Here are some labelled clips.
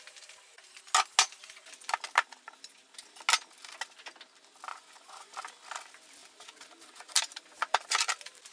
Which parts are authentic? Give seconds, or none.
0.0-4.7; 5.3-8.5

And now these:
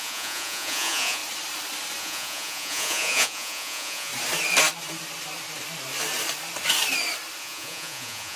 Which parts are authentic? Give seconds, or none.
1.2-2.0; 4.1-7.4

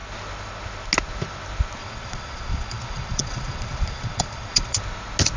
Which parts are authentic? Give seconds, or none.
0.0-1.8; 4.8-5.4

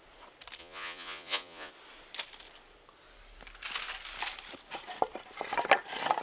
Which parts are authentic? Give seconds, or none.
0.0-0.6; 1.7-6.2

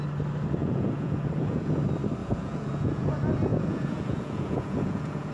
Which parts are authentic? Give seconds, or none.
0.0-0.6; 1.8-2.2; 3.1-3.5

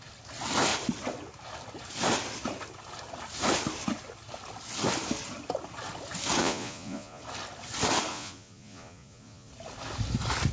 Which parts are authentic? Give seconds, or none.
0.0-6.4; 7.2-8.1; 9.5-10.5

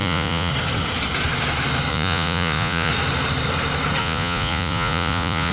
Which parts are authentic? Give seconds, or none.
0.5-1.9; 2.9-4.0

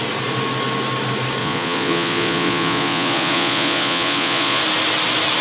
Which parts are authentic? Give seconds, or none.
0.0-1.4; 4.6-5.4